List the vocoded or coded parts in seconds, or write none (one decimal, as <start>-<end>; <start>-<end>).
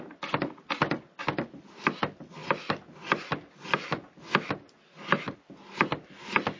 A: none